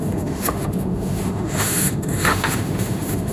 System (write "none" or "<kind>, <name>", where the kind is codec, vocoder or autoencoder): autoencoder, DAC-VAE